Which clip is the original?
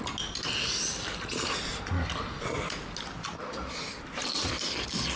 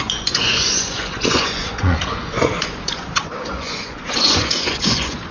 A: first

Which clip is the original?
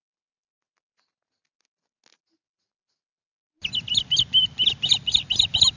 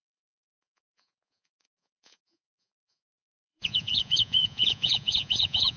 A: first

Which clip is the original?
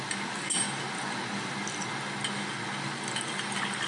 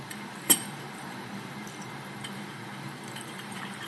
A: first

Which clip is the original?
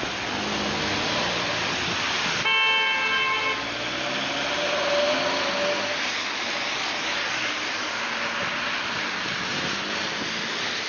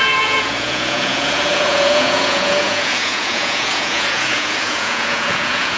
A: first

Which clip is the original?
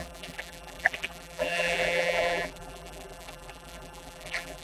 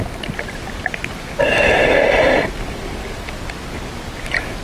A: second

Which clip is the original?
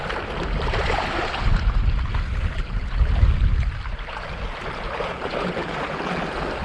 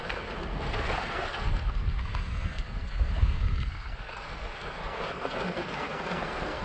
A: first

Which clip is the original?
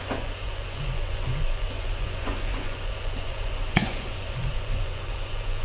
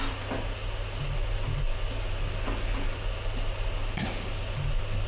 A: second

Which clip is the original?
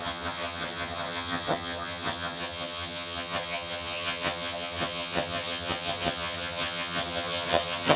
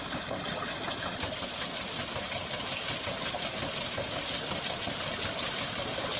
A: second